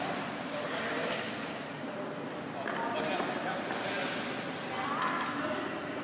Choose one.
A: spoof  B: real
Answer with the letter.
B